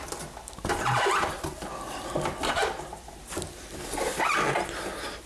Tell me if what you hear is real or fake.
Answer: real